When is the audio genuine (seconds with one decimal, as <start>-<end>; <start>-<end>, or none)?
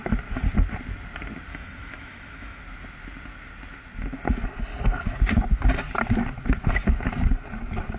0.0-1.5; 2.6-8.0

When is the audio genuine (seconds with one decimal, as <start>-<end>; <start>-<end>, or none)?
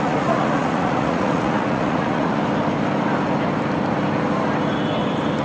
2.4-5.4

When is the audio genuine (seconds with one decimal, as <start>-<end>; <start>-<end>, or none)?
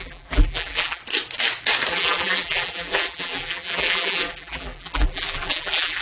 1.0-1.9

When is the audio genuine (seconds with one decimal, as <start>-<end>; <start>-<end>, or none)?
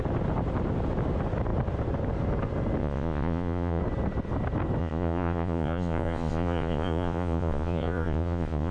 0.0-2.8; 3.8-4.8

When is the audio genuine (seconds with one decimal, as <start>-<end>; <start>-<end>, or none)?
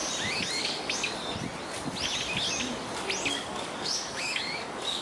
0.0-0.6; 1.2-3.3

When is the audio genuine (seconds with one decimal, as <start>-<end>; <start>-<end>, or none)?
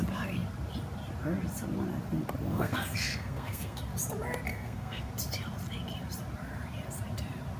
0.0-2.5; 3.8-4.5; 5.1-7.6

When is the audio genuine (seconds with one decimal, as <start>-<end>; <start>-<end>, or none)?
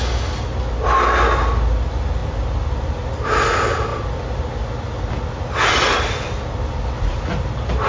0.0-7.9